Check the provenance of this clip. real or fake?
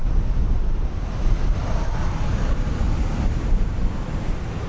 fake